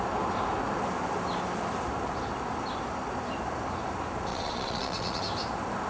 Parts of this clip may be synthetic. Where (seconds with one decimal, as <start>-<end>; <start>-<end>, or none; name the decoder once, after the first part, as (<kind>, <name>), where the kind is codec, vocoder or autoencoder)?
4.3-5.2 (vocoder, Vocos)